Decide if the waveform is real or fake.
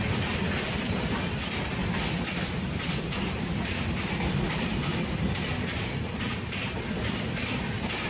real